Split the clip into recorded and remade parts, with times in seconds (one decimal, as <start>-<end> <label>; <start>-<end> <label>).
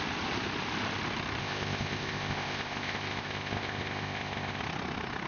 0.0-1.4 recorded; 1.4-4.6 remade; 4.6-5.3 recorded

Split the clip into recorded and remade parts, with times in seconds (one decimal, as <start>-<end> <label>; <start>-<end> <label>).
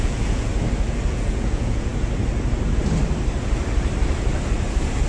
0.0-0.5 remade; 0.5-1.1 recorded; 1.1-1.9 remade; 1.9-5.1 recorded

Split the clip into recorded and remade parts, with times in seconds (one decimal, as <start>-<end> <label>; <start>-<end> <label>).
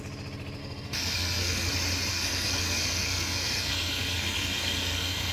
0.0-0.6 recorded; 0.6-1.7 remade; 1.7-2.1 recorded; 2.1-5.3 remade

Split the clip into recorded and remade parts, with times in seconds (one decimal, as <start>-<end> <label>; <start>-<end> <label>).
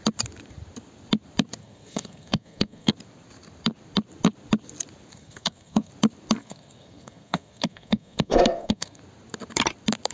0.0-1.6 recorded; 1.6-2.9 remade; 2.9-5.1 recorded; 5.1-5.9 remade; 5.9-6.4 recorded; 6.4-9.0 remade; 9.0-10.1 recorded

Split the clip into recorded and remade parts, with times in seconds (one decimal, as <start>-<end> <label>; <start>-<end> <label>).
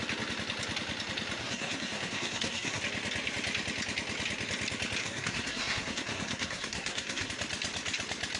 0.0-1.4 recorded; 1.4-2.8 remade; 2.8-5.0 recorded; 5.0-7.3 remade; 7.3-8.4 recorded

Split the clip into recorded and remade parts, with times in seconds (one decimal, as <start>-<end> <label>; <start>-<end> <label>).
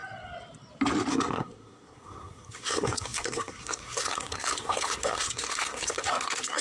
0.0-1.1 recorded; 1.1-6.6 remade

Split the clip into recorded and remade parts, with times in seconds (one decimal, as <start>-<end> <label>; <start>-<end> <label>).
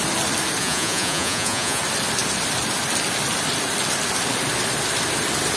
0.0-0.6 recorded; 0.6-1.8 remade; 1.8-5.6 recorded